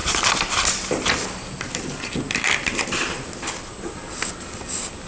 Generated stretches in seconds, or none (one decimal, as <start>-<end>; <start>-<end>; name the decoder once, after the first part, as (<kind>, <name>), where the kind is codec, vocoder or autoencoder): none